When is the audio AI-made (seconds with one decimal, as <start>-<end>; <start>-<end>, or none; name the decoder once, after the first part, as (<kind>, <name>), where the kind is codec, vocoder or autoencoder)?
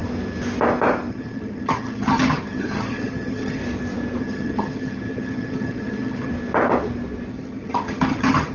1.1-3.6 (vocoder, HiFi-GAN); 4.2-6.3; 7.3-8.5